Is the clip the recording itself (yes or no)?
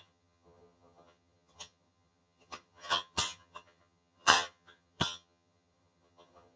no